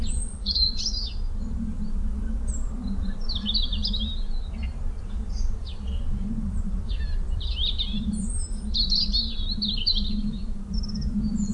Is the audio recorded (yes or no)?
no